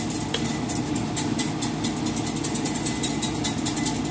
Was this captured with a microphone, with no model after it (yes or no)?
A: yes